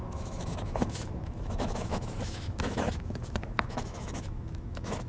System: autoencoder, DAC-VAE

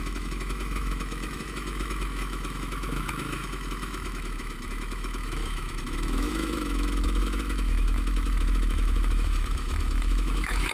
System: autoencoder, DAC-VAE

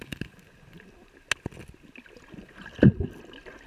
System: none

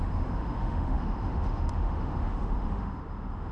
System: autoencoder, DAC-VAE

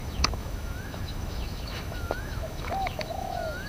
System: autoencoder, DAC-VAE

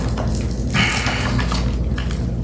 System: none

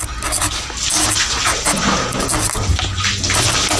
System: none